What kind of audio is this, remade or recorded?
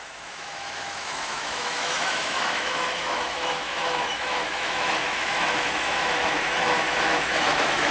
remade